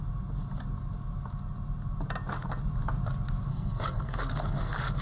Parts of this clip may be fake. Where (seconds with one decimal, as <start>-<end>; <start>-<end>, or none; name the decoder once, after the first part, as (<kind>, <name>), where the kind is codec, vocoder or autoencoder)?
3.5-5.0 (codec, SNAC)